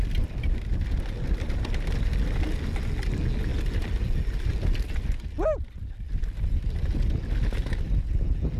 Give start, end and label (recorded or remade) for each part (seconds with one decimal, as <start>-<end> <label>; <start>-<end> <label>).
0.0-8.6 recorded